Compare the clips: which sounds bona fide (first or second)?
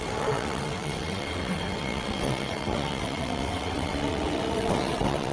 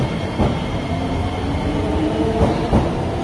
second